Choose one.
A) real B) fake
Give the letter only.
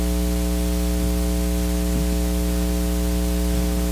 A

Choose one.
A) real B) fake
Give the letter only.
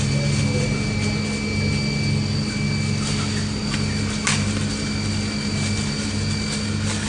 A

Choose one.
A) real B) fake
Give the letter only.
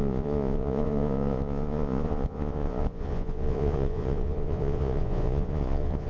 B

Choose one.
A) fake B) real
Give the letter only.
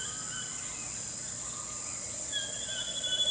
B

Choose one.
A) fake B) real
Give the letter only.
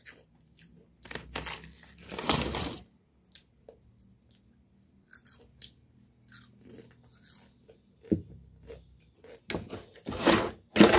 B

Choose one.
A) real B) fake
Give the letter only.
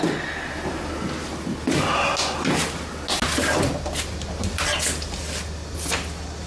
A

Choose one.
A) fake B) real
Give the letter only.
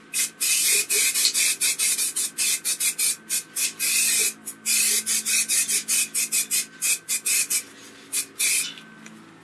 B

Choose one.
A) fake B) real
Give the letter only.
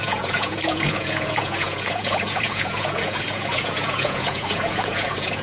A